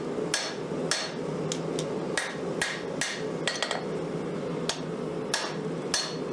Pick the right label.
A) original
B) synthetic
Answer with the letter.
A